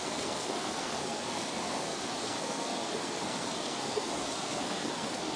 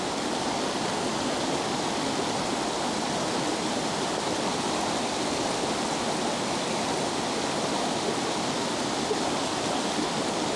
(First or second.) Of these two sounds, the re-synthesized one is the first